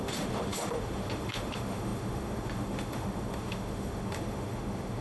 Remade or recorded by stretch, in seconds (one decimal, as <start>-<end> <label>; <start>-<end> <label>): 0.0-5.0 remade